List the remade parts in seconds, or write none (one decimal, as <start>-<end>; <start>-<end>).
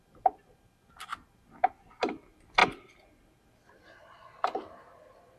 none